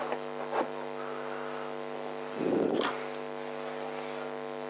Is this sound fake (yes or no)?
no